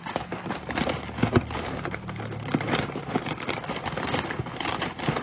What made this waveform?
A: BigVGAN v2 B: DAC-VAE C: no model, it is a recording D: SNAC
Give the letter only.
C